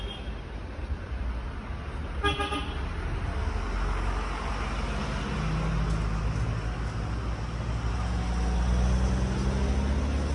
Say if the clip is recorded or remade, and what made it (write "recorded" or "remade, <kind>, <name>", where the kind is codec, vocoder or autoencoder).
recorded